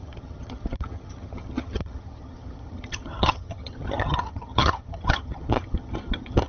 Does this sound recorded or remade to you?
remade